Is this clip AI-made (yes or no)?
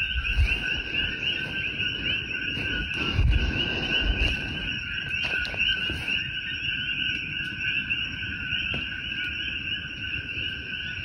no